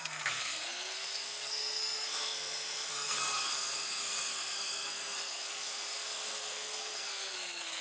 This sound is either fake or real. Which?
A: fake